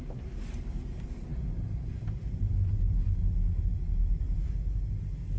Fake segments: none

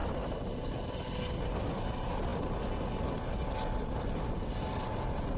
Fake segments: none

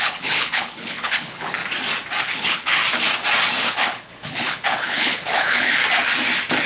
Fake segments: 0.0-1.6 (codec, HILCodec); 2.2-2.8; 3.6-5.8

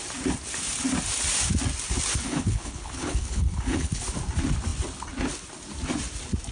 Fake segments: 2.1-4.0 (codec, HILCodec)

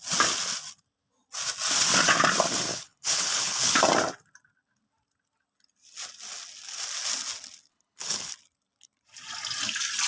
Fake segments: 2.7-3.8 (codec, HILCodec); 7.7-8.3

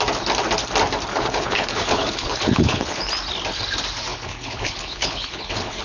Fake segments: 1.1-3.1 (codec, HILCodec); 4.1-5.8

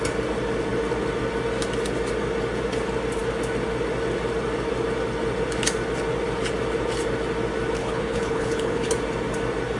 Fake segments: 7.8-8.9 (codec, HILCodec)

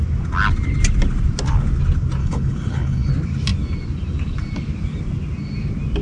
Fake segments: 2.2-3.1 (codec, HILCodec)